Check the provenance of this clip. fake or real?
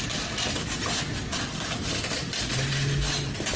real